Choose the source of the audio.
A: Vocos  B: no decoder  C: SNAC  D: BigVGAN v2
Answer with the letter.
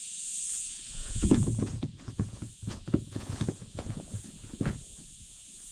A